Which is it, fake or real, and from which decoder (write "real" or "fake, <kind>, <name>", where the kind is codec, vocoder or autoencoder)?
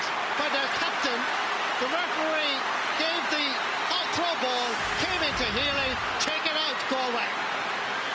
real